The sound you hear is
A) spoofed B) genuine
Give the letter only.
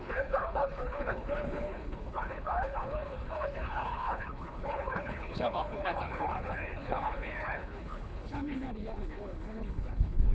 A